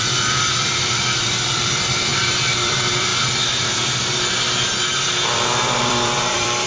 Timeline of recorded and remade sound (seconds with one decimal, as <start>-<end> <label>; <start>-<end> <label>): 0.0-3.1 remade; 3.1-5.8 recorded; 5.8-6.7 remade

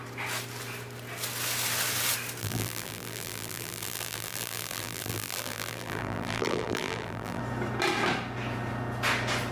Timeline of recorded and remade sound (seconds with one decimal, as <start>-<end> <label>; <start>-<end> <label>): 0.0-2.4 recorded; 2.4-7.4 remade; 7.4-9.5 recorded

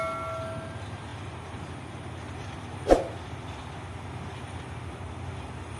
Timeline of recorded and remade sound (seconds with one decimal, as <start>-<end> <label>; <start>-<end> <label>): 0.0-5.8 recorded

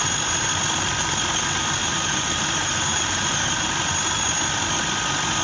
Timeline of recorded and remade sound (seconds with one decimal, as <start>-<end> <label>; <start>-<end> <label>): 0.0-1.8 recorded; 1.8-3.7 remade; 3.7-5.4 recorded

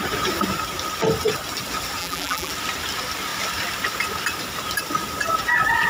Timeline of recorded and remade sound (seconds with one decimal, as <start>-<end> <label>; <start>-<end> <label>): 0.0-2.0 recorded; 2.0-2.5 remade; 2.5-5.9 recorded

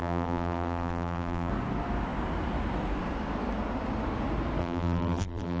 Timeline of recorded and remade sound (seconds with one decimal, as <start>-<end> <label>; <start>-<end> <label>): 0.0-1.5 remade; 1.5-4.6 recorded; 4.6-5.6 remade